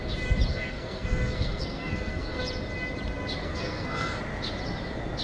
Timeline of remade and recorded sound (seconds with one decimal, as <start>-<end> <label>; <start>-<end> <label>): 0.0-0.5 recorded; 0.5-2.4 remade; 2.4-3.4 recorded; 3.4-4.2 remade; 4.2-5.2 recorded